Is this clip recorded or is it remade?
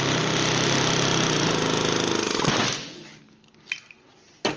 recorded